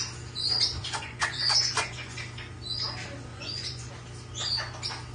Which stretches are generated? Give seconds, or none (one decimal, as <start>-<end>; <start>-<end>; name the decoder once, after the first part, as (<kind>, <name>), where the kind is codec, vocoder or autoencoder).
0.8-2.2 (vocoder, Vocos); 3.3-3.9